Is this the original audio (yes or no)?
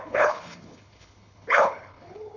no